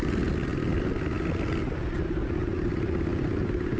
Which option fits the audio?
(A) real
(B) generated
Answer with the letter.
A